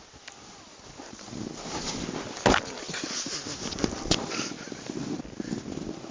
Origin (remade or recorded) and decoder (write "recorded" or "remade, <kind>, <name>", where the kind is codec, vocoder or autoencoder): recorded